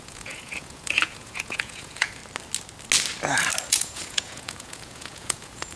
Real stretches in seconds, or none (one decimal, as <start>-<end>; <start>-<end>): 2.2-3.7